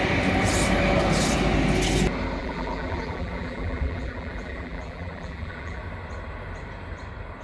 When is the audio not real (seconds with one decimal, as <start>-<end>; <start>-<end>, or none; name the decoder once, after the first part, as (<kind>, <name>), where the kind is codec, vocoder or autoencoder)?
2.4-5.8 (vocoder, BigVGAN v2)